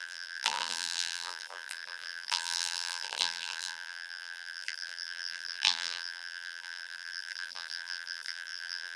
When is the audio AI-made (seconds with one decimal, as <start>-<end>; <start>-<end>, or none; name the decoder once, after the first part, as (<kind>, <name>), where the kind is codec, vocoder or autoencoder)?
0.0-9.0 (vocoder, BigVGAN v2)

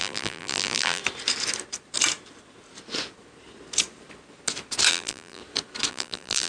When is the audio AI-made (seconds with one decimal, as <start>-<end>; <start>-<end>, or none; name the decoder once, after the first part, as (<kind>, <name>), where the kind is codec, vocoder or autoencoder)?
0.0-1.0 (vocoder, BigVGAN v2); 4.9-5.4; 5.9-6.5

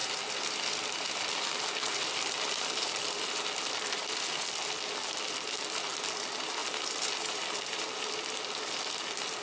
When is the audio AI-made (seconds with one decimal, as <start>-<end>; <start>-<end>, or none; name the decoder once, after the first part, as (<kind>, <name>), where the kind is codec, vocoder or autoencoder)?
0.0-4.2 (vocoder, BigVGAN v2); 6.6-8.1

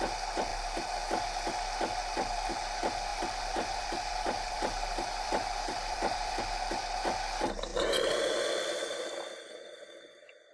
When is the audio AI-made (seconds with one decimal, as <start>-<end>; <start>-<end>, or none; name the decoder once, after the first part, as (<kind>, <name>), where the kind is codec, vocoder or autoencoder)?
3.1-6.4 (vocoder, BigVGAN v2); 7.7-8.5

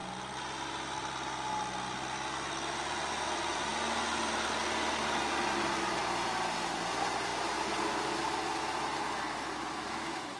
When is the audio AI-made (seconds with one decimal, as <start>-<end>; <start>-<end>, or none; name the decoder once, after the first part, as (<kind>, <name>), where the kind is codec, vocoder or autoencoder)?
3.2-3.7 (vocoder, BigVGAN v2); 5.6-7.3; 9.8-10.4

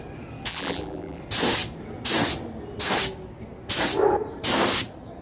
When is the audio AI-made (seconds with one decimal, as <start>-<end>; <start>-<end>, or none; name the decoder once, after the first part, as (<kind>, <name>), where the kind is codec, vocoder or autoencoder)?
0.5-1.2 (vocoder, BigVGAN v2)

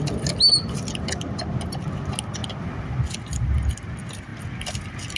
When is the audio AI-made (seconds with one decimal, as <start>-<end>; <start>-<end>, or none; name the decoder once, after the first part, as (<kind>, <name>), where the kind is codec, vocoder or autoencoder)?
none

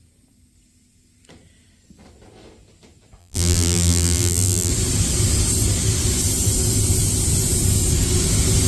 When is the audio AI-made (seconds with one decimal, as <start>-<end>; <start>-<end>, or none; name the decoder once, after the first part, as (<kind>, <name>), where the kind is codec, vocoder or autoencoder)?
3.2-4.7 (vocoder, BigVGAN v2)